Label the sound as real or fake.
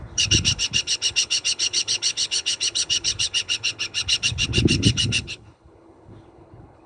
fake